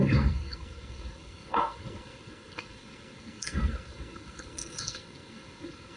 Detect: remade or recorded remade